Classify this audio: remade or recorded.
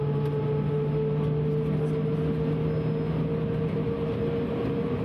recorded